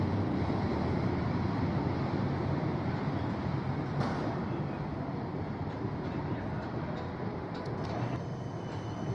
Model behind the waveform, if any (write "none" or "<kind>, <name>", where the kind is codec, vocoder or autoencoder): none